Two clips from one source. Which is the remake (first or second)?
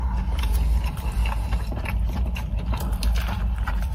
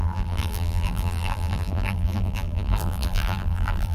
second